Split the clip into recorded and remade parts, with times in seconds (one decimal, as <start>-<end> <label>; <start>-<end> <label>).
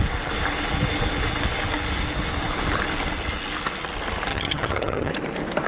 0.0-4.3 recorded; 4.3-5.1 remade; 5.1-5.7 recorded